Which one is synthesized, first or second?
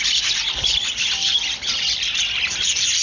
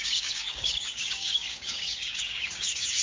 second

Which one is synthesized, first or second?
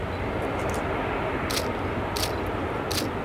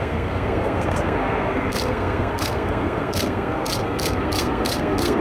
second